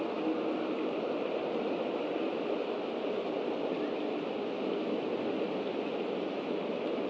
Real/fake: real